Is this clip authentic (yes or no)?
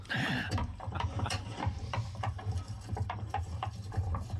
no